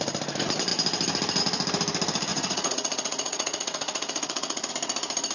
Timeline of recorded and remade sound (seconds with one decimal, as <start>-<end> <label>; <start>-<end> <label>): 0.0-2.3 recorded; 2.3-4.7 remade; 4.7-5.3 recorded